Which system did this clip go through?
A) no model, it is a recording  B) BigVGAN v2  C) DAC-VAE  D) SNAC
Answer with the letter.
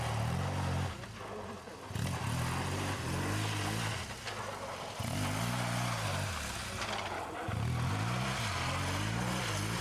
A